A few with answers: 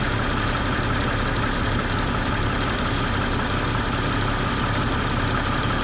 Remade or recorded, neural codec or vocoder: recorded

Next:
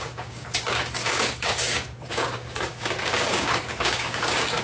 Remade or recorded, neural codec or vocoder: remade, codec, DAC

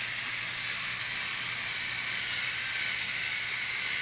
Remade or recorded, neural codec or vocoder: recorded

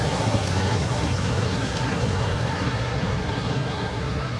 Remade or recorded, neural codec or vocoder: remade, codec, SNAC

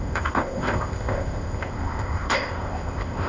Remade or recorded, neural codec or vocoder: remade, codec, ZipCodec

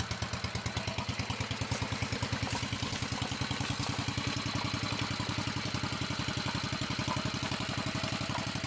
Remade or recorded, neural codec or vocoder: recorded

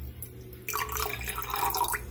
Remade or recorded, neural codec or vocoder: recorded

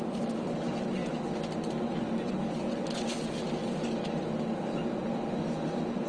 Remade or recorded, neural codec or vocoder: recorded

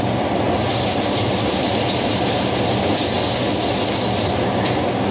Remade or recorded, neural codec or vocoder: recorded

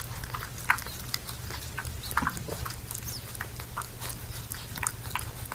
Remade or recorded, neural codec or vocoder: recorded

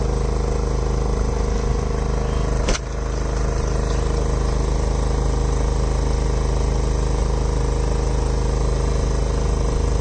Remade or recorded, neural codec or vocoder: recorded